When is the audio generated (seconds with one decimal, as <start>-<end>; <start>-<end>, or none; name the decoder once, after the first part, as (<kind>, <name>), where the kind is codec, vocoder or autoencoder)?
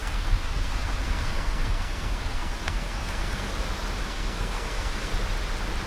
0.0-3.5 (codec, SNAC); 4.0-5.1